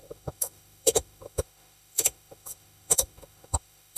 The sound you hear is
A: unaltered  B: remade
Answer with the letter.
B